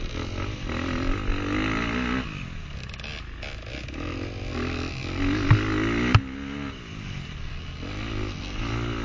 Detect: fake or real real